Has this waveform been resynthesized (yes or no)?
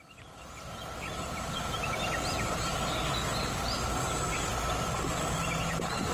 no